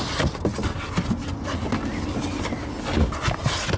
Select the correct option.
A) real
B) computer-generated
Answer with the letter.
A